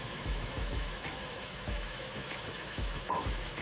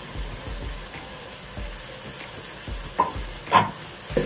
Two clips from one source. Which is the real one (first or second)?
second